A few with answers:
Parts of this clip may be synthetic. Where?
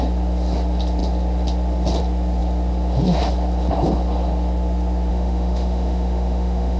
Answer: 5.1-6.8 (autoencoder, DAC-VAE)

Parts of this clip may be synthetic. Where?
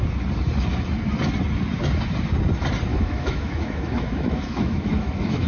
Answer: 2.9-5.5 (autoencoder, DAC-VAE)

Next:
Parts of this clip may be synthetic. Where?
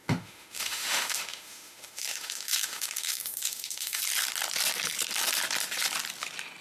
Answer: 0.0-4.0 (autoencoder, DAC-VAE)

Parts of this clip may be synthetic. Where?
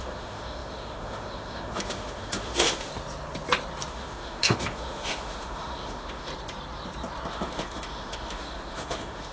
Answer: 0.0-2.9 (autoencoder, DAC-VAE); 3.9-6.3; 7.3-9.3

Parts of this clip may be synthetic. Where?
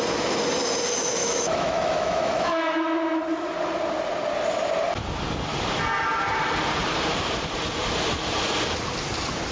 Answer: 1.2-3.2 (autoencoder, DAC-VAE)